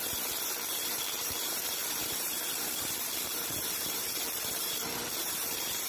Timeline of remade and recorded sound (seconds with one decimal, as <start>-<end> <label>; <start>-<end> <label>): 0.0-5.9 remade